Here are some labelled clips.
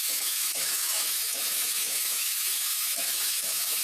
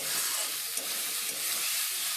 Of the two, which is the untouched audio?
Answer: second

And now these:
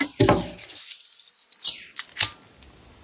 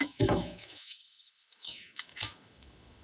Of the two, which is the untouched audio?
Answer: first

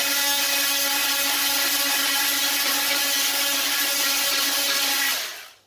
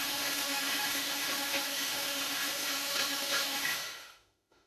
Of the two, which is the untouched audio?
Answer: first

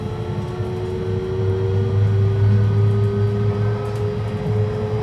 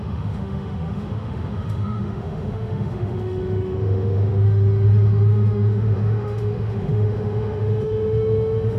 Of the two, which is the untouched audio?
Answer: first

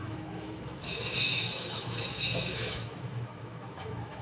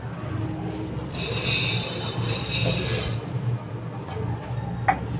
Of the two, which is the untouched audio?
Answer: second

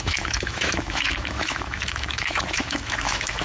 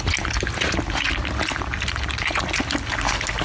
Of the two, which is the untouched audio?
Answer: second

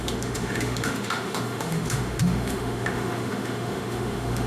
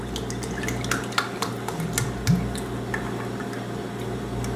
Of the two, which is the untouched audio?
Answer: second